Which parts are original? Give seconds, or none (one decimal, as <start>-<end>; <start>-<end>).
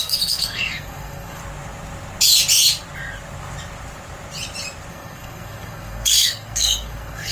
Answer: 1.4-4.9